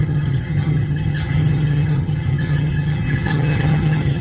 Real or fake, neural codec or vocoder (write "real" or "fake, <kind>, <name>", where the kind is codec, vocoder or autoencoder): fake, vocoder, HiFi-GAN